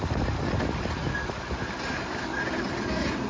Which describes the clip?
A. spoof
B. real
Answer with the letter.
B